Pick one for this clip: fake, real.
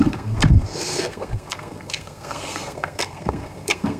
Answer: fake